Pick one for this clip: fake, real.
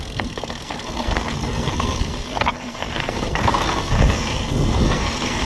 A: fake